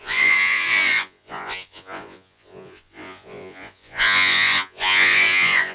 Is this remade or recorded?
remade